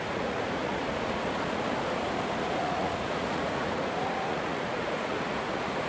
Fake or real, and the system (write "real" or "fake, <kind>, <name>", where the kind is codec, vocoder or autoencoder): fake, vocoder, Vocos